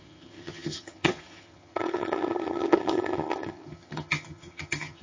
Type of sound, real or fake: fake